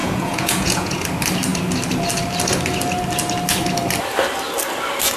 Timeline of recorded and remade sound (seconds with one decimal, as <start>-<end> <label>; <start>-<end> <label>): 0.0-1.0 remade; 1.0-5.2 recorded